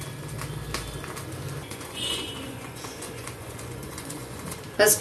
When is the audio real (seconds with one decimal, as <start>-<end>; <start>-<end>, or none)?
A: 0.0-1.6; 4.6-5.0